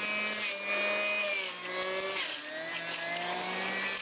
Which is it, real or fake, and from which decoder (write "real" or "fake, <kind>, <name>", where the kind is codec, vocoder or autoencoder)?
real